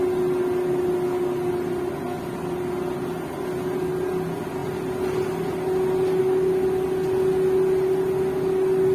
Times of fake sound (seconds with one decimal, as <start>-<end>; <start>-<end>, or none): none